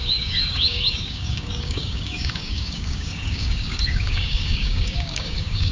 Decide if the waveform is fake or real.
fake